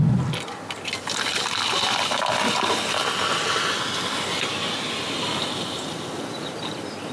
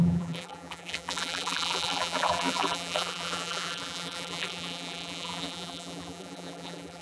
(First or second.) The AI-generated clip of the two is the second